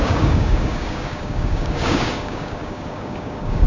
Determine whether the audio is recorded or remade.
remade